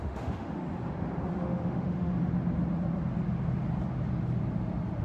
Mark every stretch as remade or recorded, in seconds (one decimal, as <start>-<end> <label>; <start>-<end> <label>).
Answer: 0.0-0.6 remade; 0.6-1.4 recorded; 1.4-2.1 remade; 2.1-5.0 recorded